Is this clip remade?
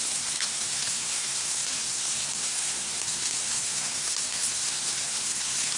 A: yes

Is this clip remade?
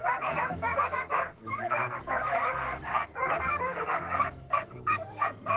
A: yes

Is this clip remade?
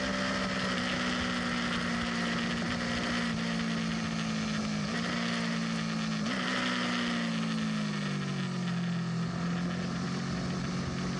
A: no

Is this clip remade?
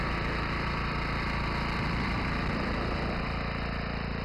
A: no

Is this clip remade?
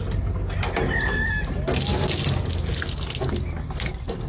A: no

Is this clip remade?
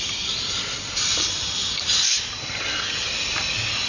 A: no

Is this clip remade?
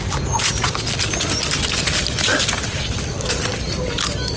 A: no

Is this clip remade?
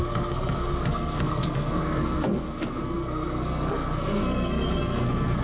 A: yes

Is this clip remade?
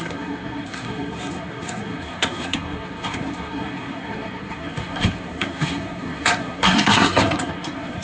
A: yes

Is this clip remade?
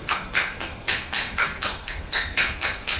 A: yes